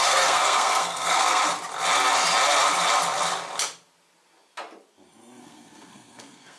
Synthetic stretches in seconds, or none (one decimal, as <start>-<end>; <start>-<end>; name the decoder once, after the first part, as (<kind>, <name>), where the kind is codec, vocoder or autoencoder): 0.0-1.4 (codec, SNAC); 5.4-6.6